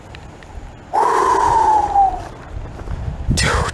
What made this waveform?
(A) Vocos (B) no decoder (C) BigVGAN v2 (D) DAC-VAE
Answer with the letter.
B